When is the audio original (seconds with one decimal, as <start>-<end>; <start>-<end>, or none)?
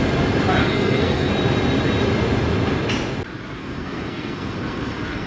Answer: 0.0-0.6; 1.3-3.6